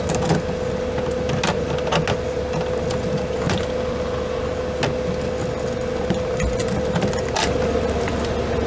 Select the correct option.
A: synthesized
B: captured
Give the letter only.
B